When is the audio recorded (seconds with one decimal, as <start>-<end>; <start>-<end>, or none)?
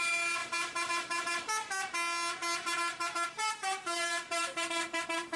0.0-0.4; 1.5-3.4